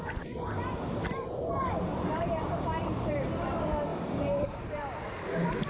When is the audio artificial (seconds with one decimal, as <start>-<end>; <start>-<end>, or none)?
0.0-5.7

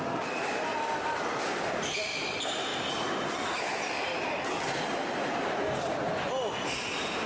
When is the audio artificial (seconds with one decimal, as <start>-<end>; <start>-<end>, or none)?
0.7-1.3; 5.2-6.0

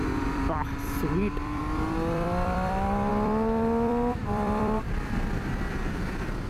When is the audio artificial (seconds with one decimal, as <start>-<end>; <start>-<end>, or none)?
0.0-6.5

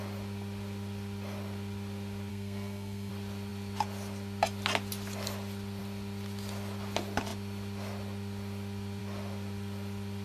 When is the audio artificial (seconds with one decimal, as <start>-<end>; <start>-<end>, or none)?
2.3-3.1

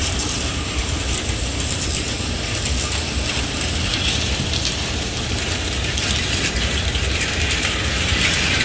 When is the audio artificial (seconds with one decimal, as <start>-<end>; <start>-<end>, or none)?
0.0-0.8; 3.9-8.6

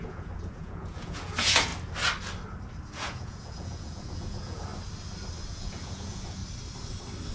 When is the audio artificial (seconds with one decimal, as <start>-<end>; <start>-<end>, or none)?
0.0-1.7; 2.9-4.7; 5.5-6.4

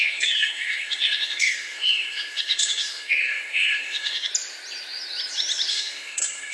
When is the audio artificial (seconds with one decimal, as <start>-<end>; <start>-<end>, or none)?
0.0-4.3; 5.7-6.5